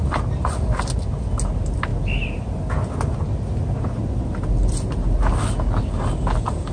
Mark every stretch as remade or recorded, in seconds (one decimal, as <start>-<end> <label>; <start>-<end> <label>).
0.0-6.7 recorded